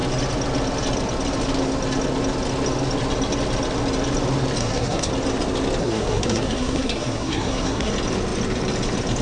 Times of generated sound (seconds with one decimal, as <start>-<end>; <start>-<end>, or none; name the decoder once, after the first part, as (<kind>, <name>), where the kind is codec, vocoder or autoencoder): 4.6-5.1 (codec, SNAC); 5.8-7.9